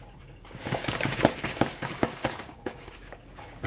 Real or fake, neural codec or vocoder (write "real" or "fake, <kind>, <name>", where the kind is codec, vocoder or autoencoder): fake, codec, DAC